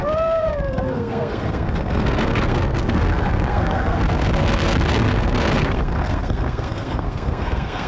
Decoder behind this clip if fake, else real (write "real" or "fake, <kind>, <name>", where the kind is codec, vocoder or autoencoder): fake, codec, SNAC